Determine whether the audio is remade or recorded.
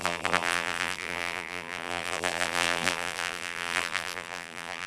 remade